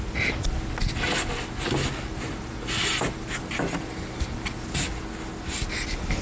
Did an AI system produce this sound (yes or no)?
no